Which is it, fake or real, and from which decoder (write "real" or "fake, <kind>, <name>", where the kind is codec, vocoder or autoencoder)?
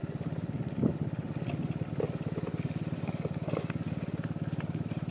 real